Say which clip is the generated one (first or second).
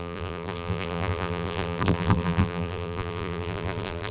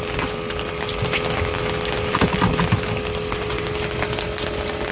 first